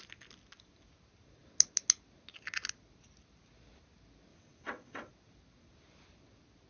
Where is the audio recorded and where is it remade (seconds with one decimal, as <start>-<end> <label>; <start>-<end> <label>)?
0.0-4.3 recorded; 4.3-5.1 remade; 5.1-6.7 recorded